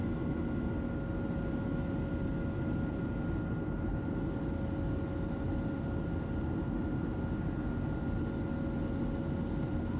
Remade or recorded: recorded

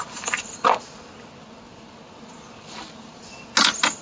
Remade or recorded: recorded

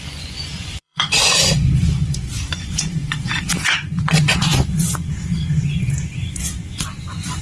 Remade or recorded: remade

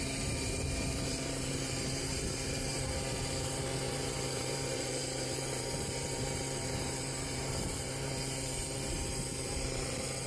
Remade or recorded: remade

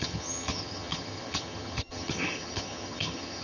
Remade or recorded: remade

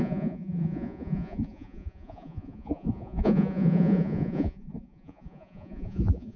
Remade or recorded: remade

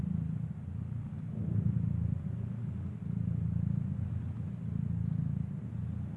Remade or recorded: recorded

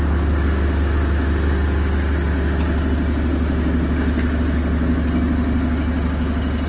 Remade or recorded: recorded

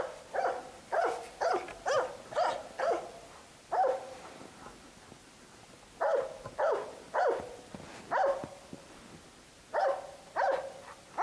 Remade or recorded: recorded